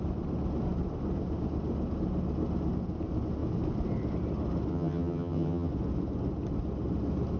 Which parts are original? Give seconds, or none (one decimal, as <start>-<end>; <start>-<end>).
0.0-4.7; 5.7-7.4